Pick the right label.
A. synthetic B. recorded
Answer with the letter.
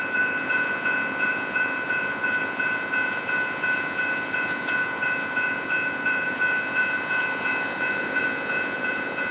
A